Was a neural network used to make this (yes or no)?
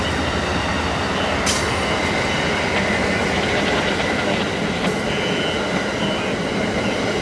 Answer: no